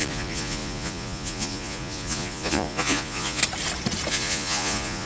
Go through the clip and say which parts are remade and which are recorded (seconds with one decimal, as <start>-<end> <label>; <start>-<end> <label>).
0.0-3.4 remade; 3.4-4.1 recorded; 4.1-5.1 remade